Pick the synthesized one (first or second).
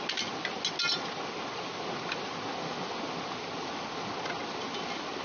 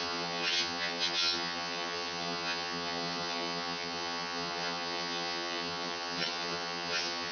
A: second